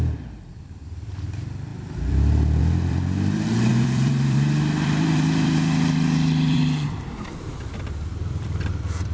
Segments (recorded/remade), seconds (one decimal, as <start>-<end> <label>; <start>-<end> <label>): 0.0-9.1 remade